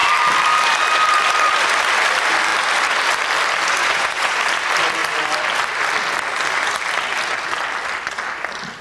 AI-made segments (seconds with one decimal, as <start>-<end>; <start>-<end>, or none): 3.8-4.4

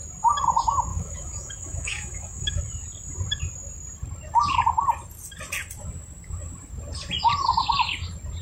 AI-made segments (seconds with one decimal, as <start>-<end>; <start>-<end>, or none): 0.9-2.6

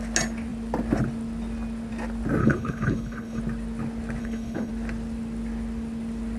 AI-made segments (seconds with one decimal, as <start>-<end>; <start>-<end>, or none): 2.4-3.4; 4.2-4.7

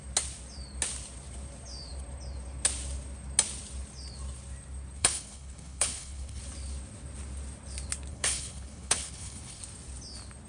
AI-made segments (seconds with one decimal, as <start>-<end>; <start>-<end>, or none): 5.0-6.4; 8.1-9.6